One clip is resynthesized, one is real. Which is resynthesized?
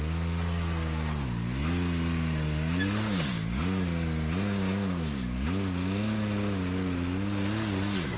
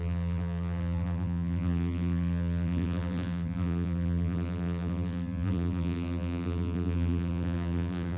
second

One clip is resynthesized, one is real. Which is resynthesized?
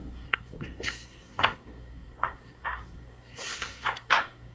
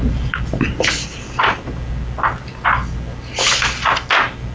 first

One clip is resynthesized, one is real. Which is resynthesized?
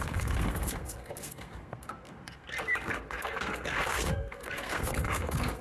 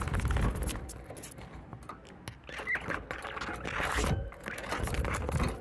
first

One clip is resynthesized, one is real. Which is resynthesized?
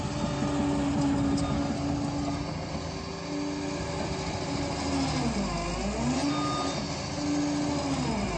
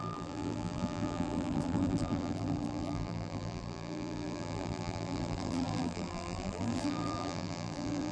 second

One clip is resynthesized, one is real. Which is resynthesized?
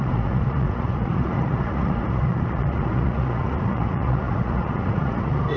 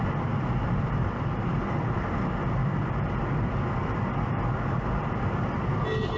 first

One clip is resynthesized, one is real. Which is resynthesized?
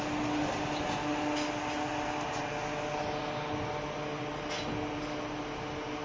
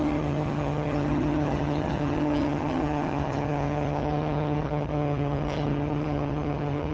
second